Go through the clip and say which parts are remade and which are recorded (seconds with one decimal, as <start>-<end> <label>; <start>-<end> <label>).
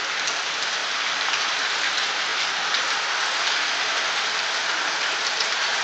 0.0-0.8 recorded; 0.8-1.4 remade; 1.4-5.8 recorded